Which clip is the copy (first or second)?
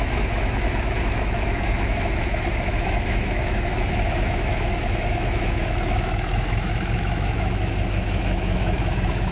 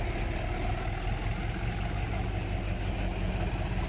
first